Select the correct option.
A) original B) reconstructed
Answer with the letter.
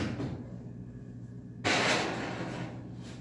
A